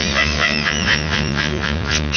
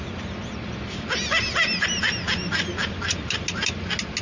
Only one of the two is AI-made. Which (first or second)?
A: first